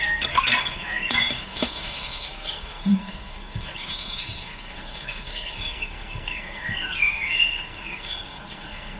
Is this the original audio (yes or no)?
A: no